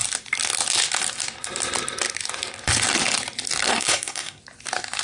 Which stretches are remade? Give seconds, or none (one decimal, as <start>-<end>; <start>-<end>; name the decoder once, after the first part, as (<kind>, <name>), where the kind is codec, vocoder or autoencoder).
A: 3.7-4.4 (codec, SNAC)